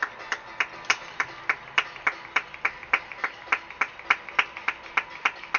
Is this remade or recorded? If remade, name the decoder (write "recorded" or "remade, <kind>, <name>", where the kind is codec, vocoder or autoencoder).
recorded